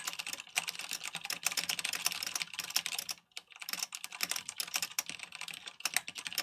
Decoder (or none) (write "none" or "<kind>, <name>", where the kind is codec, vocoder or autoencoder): none